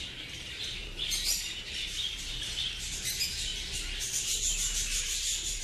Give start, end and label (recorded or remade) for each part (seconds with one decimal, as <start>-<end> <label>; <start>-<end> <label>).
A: 0.0-3.5 remade; 3.5-5.0 recorded; 5.0-5.6 remade